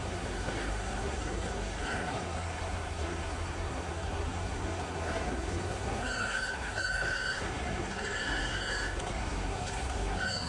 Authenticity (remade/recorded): remade